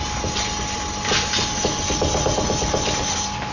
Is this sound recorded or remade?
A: recorded